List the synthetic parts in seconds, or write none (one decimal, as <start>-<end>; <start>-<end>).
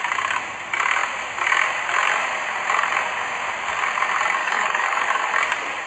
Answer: 4.4-5.3